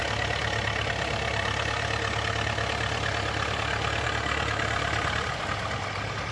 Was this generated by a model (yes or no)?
no